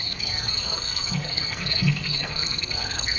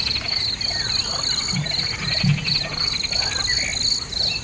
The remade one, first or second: first